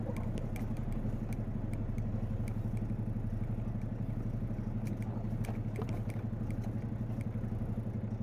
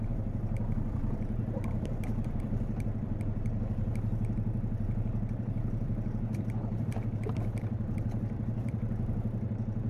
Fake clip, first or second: second